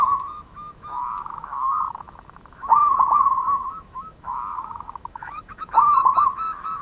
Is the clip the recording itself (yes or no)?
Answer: no